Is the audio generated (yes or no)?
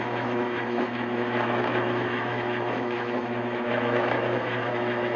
yes